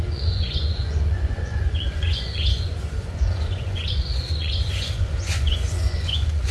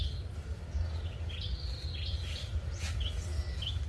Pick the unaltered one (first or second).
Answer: second